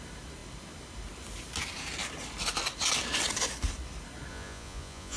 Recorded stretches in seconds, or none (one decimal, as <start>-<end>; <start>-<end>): 0.0-4.3